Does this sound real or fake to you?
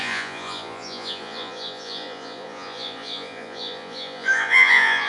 fake